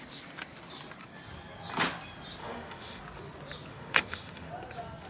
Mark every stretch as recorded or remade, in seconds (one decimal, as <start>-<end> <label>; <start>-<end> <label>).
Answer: 0.0-2.4 recorded; 2.4-3.0 remade; 3.0-3.7 recorded; 3.7-4.5 remade; 4.5-5.1 recorded